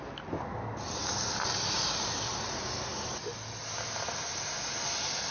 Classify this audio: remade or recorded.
recorded